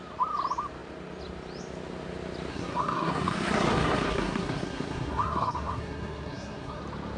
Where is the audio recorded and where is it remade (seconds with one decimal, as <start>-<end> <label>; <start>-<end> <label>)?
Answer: 0.0-2.5 recorded; 2.5-6.8 remade; 6.8-7.2 recorded